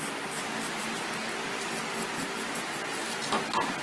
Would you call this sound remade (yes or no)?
no